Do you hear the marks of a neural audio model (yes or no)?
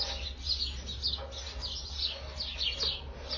no